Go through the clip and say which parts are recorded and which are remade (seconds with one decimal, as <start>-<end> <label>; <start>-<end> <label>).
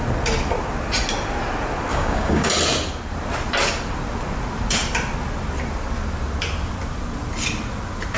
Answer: 0.0-1.9 recorded; 1.9-2.5 remade; 2.5-8.2 recorded